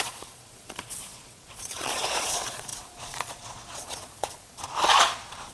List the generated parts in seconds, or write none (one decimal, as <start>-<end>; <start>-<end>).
0.0-5.5